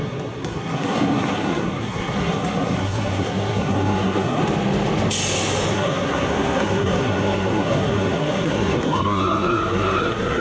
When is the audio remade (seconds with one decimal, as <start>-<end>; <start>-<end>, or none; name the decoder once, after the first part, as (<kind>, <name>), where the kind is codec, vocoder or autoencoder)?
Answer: 0.0-4.4 (codec, SNAC); 5.7-10.4

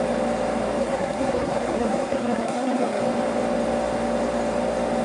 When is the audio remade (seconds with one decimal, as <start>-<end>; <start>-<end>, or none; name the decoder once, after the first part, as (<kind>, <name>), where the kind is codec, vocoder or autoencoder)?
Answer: 0.8-3.0 (codec, SNAC)

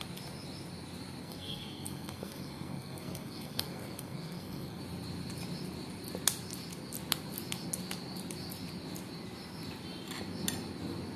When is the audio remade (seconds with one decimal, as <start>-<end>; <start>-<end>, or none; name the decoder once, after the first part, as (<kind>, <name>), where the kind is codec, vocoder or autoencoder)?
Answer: 1.2-4.8 (codec, SNAC)

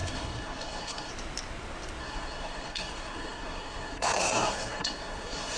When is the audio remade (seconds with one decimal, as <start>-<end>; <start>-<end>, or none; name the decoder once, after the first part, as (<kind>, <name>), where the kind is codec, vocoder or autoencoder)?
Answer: 0.0-1.1 (codec, SNAC); 2.0-5.6

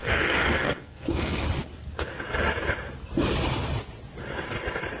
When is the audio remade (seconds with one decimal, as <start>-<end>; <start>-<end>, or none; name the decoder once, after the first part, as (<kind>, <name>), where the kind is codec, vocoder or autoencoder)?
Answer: 0.0-1.4 (codec, SNAC)

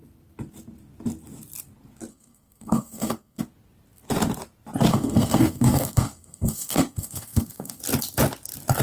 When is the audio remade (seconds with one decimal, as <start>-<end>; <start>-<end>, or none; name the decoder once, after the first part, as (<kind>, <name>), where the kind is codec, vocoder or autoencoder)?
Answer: 2.1-3.4 (codec, SNAC); 4.9-7.8